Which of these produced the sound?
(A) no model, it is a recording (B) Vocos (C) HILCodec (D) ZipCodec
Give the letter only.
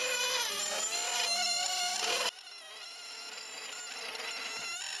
A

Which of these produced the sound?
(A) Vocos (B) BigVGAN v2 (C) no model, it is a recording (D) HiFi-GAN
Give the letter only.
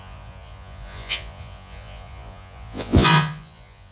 A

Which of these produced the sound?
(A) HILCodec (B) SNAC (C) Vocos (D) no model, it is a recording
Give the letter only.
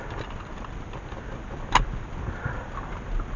D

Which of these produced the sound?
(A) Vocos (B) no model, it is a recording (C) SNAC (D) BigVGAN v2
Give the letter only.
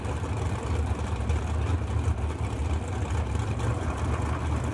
B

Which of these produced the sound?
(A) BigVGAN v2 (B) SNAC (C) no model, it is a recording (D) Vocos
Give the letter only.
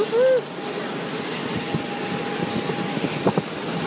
C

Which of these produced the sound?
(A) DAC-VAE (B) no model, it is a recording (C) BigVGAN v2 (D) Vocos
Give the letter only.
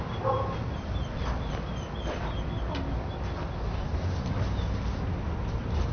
B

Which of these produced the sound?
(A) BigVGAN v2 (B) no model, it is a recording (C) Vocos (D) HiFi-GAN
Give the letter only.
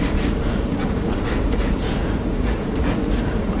C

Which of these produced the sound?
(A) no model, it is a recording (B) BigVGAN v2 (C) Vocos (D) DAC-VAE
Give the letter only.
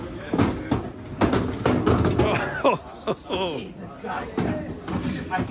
A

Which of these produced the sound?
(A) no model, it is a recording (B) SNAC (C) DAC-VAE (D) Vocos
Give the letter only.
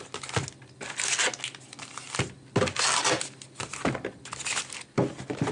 A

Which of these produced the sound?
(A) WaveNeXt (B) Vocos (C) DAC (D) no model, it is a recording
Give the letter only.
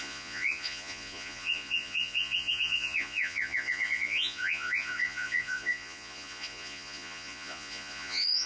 B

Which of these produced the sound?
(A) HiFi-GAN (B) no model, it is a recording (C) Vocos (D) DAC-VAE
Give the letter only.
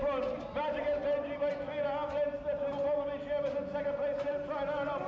B